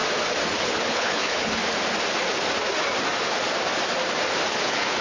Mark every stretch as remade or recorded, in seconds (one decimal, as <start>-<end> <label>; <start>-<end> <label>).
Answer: 0.0-0.6 recorded; 0.6-1.6 remade; 1.6-4.6 recorded; 4.6-5.0 remade